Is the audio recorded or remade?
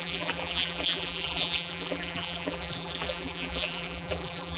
remade